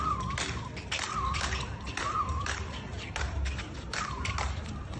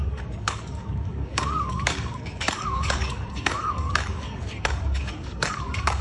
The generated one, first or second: second